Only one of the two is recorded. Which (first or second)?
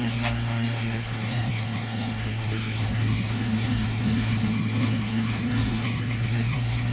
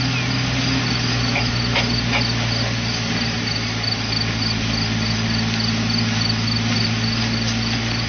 second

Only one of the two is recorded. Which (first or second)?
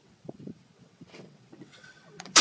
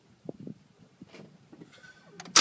second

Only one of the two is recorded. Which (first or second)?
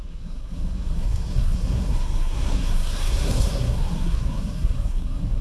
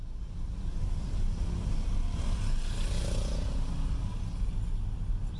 second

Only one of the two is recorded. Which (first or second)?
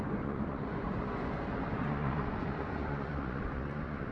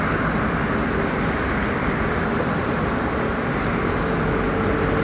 second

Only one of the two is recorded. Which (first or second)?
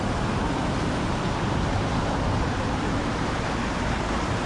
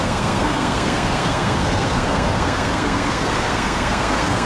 first